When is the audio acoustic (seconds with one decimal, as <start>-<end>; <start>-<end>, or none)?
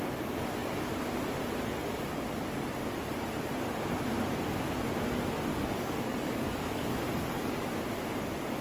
0.0-5.5; 7.7-8.6